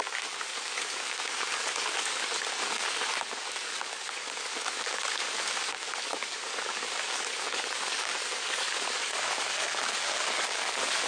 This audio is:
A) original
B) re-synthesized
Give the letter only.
B